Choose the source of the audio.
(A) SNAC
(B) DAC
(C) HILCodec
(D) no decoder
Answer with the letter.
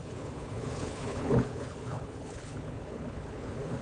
C